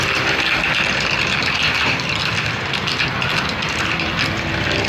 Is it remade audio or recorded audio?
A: recorded